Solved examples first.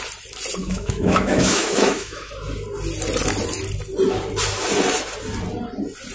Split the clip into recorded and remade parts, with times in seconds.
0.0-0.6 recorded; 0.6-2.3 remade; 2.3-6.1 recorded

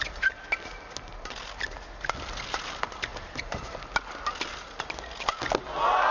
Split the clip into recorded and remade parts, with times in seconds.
0.0-6.1 recorded

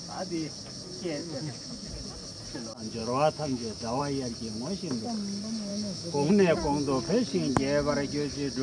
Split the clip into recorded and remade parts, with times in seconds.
0.0-1.2 recorded; 1.2-1.9 remade; 1.9-3.0 recorded; 3.0-4.0 remade; 4.0-5.7 recorded; 5.7-6.3 remade; 6.3-8.6 recorded